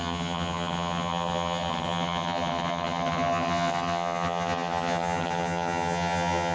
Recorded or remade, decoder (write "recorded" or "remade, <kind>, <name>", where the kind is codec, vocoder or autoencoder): remade, vocoder, HiFi-GAN